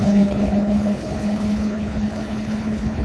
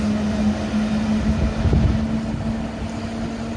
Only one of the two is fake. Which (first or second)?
first